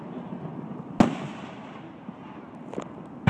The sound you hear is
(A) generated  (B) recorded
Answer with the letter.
B